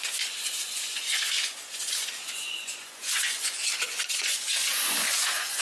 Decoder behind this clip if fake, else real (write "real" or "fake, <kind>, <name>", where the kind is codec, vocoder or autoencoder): fake, vocoder, Vocos